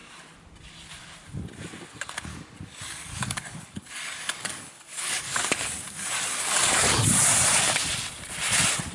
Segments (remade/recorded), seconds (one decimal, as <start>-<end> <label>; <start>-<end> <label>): 0.0-2.3 recorded; 2.3-7.0 remade; 7.0-8.9 recorded